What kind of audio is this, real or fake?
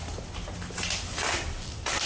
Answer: real